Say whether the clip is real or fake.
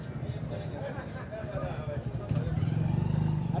real